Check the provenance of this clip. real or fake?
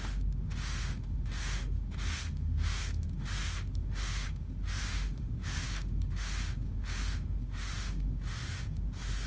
fake